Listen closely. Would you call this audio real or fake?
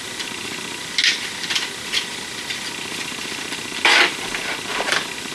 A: real